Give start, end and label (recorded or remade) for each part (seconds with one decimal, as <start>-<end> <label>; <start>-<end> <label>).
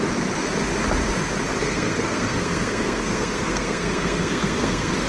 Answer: 0.0-1.6 recorded; 1.6-5.1 remade